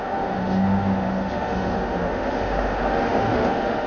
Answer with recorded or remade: remade